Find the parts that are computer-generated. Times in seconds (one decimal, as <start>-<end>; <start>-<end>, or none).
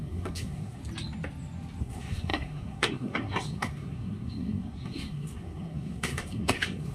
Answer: 0.0-0.8; 1.8-6.9